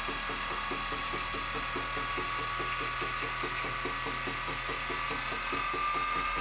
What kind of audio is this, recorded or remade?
recorded